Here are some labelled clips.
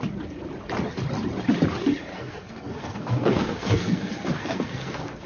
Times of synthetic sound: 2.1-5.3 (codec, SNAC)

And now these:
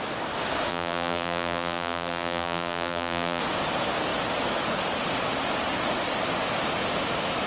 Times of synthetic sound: 0.7-3.4 (vocoder, BigVGAN v2)